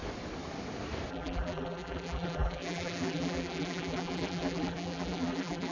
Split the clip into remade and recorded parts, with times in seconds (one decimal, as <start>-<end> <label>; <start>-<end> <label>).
0.0-1.1 recorded; 1.1-5.7 remade